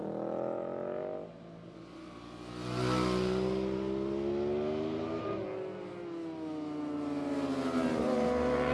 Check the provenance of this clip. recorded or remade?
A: recorded